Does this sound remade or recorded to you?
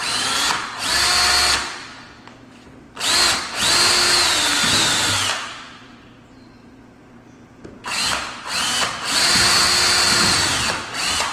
recorded